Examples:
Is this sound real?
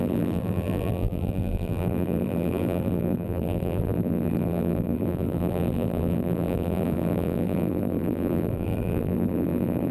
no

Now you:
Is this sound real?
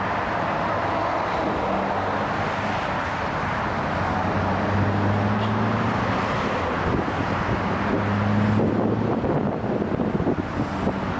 yes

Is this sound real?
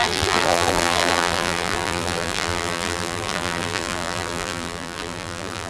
no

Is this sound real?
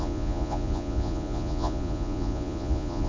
no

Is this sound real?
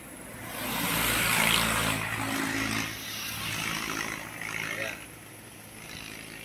yes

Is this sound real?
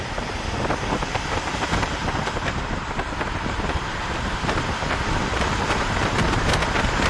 no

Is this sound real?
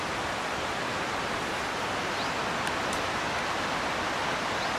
yes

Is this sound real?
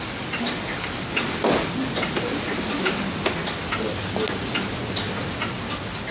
yes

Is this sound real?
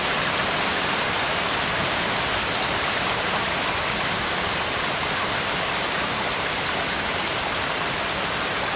yes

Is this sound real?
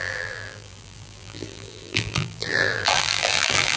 no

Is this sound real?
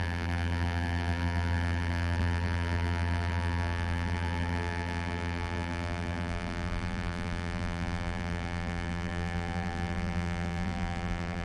no